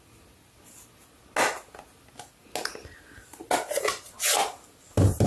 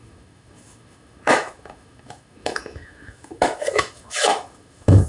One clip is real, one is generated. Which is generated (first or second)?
second